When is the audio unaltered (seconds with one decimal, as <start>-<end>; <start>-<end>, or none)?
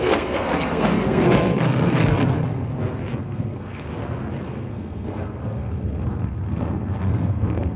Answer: 2.7-3.2; 3.9-4.4